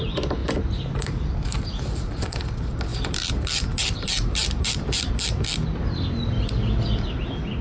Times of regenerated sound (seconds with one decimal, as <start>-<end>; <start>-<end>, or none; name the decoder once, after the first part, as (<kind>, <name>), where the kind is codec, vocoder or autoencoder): 0.4-2.4 (vocoder, BigVGAN v2); 2.9-5.1